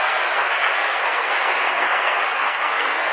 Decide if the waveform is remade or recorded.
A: remade